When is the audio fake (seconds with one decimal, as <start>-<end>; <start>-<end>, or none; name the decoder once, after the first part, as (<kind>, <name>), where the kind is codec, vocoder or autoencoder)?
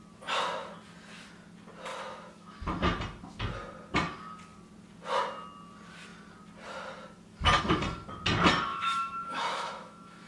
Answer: 1.9-2.6 (autoencoder, DAC-VAE); 8.7-10.3